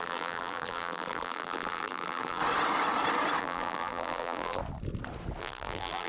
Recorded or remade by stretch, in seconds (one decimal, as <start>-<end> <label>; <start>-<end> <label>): 0.0-2.4 remade; 2.4-3.4 recorded; 3.4-4.6 remade; 4.6-5.4 recorded; 5.4-6.1 remade